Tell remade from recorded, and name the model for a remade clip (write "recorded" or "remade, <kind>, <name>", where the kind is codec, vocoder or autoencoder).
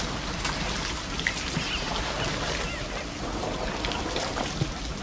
recorded